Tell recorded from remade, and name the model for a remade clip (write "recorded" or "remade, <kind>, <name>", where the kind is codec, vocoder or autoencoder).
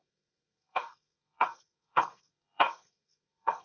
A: remade, codec, SNAC